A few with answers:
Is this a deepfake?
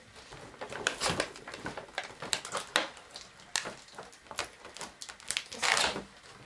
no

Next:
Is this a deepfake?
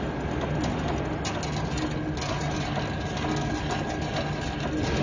no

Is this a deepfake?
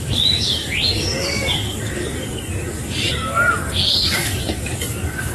yes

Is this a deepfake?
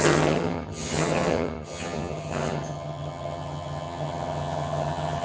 yes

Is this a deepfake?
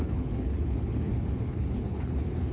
yes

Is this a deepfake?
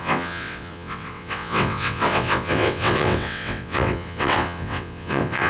yes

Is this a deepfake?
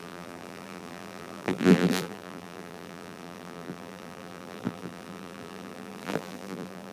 yes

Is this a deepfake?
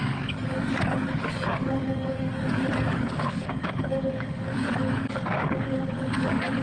yes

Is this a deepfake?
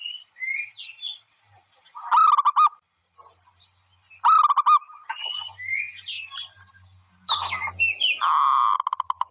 no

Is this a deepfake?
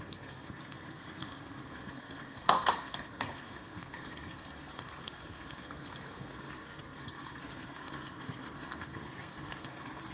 yes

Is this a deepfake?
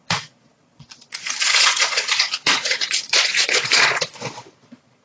yes